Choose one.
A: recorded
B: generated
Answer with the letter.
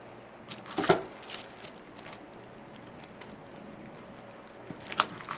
A